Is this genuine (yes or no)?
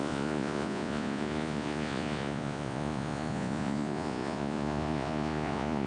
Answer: no